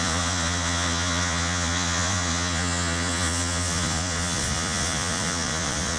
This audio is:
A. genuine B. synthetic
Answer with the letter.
B